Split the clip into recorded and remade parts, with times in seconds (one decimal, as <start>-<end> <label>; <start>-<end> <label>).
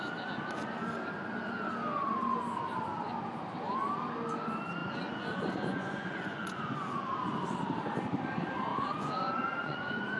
0.0-4.8 recorded; 4.8-7.1 remade; 7.1-8.7 recorded; 8.7-10.2 remade